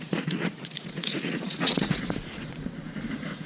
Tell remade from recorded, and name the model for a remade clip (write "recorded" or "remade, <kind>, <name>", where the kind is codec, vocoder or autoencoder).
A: remade, vocoder, Vocos